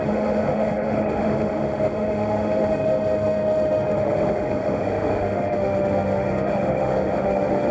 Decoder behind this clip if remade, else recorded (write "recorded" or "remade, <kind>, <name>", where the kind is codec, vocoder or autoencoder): remade, autoencoder, DAC-VAE